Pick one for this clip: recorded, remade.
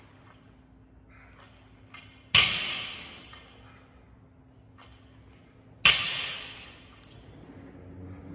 recorded